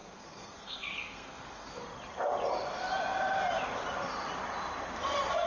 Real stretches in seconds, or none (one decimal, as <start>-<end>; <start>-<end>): 1.8-5.5